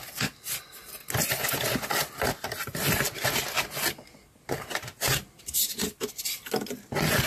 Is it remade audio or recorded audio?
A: recorded